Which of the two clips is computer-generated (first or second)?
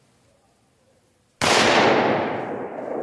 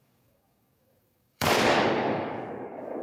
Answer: second